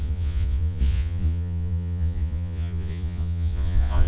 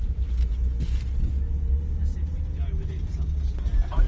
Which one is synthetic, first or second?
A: first